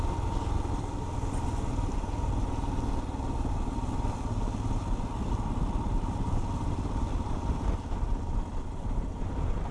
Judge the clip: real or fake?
real